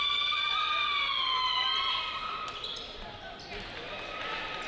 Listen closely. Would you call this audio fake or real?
real